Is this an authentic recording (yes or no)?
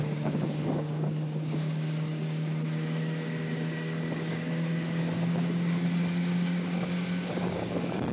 no